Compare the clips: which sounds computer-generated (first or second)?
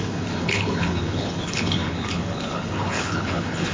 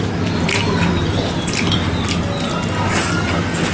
first